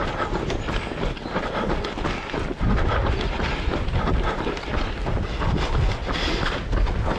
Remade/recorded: recorded